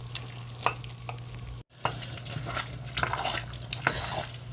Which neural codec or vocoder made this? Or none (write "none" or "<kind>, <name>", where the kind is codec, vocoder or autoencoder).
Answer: none